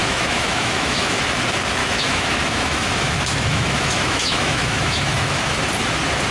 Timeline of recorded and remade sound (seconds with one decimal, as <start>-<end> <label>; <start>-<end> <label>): 0.0-1.2 remade; 1.2-1.8 recorded; 1.8-5.6 remade; 5.6-6.3 recorded